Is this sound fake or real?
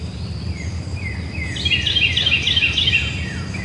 real